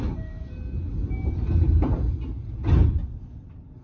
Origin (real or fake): real